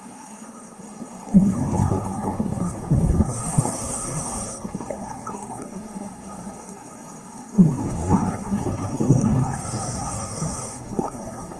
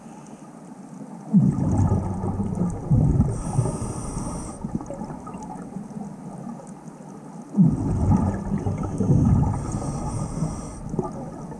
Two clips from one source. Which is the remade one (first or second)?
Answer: first